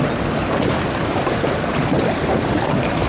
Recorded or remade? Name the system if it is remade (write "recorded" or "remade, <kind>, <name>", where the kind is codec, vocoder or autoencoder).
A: recorded